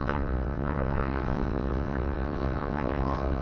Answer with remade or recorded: remade